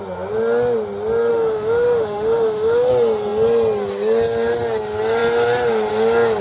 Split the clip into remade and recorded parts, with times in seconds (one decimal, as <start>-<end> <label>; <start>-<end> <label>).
0.0-1.3 recorded; 1.3-2.9 remade; 2.9-6.4 recorded